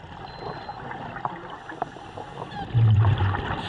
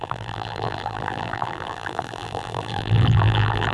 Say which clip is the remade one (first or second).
second